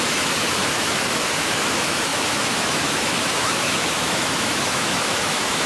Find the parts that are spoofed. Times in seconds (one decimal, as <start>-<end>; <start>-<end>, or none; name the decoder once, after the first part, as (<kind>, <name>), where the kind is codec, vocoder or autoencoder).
0.0-5.7 (autoencoder, DAC-VAE)